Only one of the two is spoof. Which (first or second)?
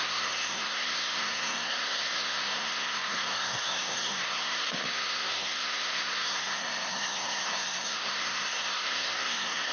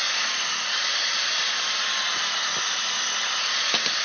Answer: first